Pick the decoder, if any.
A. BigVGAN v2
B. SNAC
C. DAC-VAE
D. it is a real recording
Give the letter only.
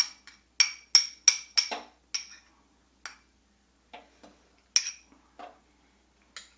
D